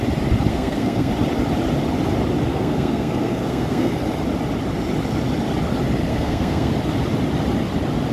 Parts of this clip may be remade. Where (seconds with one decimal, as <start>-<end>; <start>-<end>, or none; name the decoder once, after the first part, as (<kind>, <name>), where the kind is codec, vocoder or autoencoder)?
0.5-1.1 (codec, SNAC); 2.5-3.9; 6.1-6.7